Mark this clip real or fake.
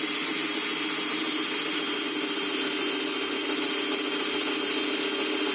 real